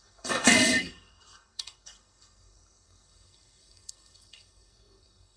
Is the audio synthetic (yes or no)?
yes